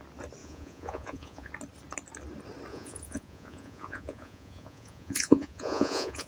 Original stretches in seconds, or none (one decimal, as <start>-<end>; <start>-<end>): 0.0-0.4; 1.5-2.7